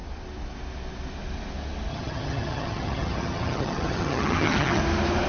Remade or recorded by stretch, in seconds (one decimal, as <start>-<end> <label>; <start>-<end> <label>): 0.0-1.9 recorded; 1.9-4.8 remade; 4.8-5.3 recorded